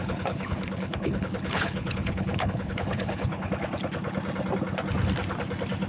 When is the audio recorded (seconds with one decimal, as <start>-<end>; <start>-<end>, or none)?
3.5-5.9